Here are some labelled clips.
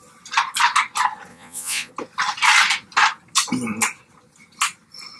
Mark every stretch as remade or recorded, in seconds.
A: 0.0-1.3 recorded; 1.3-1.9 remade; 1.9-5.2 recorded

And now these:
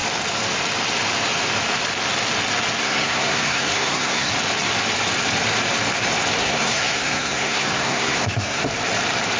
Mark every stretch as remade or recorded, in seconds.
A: 0.0-2.8 recorded; 2.8-4.3 remade; 4.3-6.4 recorded; 6.4-8.6 remade; 8.6-9.4 recorded

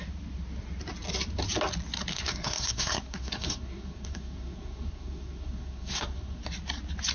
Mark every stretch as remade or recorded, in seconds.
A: 0.0-2.1 recorded; 2.1-6.4 remade; 6.4-7.1 recorded

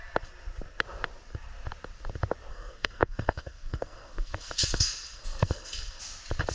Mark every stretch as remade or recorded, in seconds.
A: 0.0-2.5 recorded; 2.5-6.0 remade; 6.0-6.5 recorded

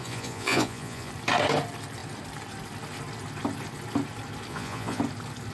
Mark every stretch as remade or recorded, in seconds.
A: 0.0-1.1 remade; 1.1-4.5 recorded; 4.5-5.0 remade; 5.0-5.5 recorded

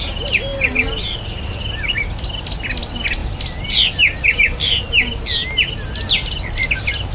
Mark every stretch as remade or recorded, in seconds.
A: 0.0-7.1 recorded